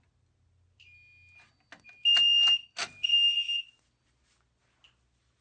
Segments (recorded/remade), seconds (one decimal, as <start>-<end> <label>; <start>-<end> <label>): 0.0-5.4 recorded